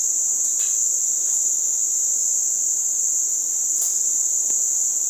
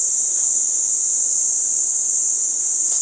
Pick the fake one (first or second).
second